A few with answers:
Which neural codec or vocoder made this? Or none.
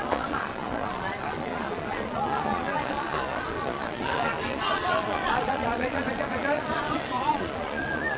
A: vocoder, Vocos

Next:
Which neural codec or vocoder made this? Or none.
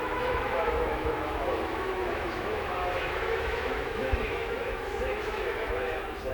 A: autoencoder, DAC-VAE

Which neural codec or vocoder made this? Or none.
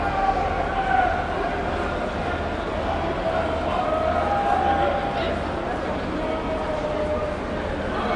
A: none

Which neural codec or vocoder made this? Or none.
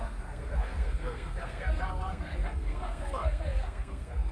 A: codec, SNAC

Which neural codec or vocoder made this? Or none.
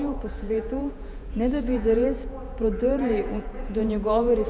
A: vocoder, Vocos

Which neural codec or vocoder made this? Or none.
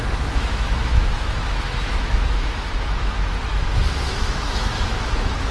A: autoencoder, DAC-VAE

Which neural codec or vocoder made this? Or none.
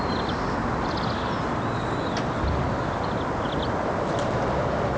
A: none